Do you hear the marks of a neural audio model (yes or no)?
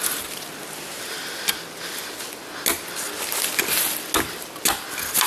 no